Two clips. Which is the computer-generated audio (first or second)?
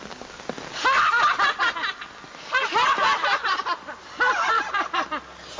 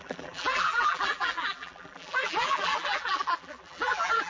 second